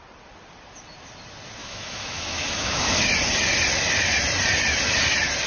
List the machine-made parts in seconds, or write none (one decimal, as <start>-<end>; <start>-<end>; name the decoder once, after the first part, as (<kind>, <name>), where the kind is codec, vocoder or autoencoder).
1.6-3.0 (autoencoder, DAC-VAE)